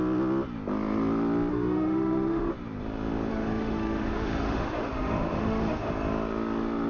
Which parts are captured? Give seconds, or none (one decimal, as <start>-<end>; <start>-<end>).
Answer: 0.0-1.5; 2.5-3.3; 5.9-6.9